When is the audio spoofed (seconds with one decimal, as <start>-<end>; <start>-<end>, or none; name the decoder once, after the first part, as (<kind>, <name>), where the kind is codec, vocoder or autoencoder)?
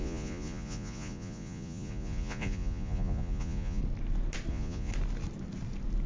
0.0-3.8 (vocoder, Vocos); 4.5-4.9